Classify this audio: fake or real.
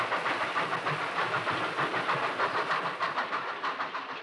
real